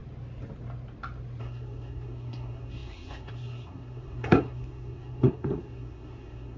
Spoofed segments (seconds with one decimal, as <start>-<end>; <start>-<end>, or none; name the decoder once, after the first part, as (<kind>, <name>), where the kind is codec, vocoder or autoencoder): 1.4-6.6 (codec, SNAC)